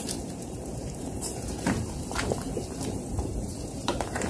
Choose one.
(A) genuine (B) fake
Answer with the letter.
B